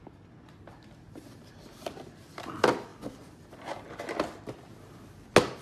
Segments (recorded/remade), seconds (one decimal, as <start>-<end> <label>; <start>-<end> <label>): 0.0-5.6 recorded